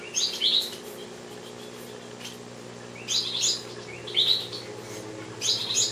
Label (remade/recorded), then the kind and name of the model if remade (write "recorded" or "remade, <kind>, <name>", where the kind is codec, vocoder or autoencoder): recorded